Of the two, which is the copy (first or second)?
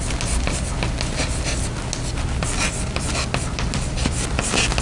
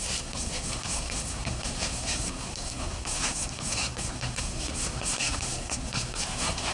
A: second